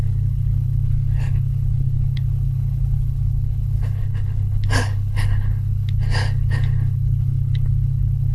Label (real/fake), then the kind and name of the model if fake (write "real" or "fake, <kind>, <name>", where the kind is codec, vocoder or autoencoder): fake, codec, HILCodec